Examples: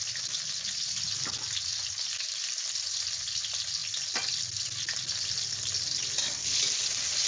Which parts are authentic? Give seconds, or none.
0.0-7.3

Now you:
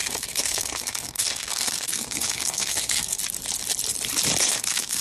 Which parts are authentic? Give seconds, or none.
3.2-4.4